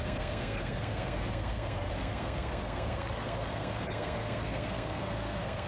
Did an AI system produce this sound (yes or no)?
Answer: yes